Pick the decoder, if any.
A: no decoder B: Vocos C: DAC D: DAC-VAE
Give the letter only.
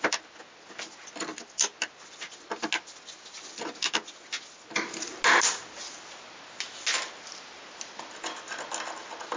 A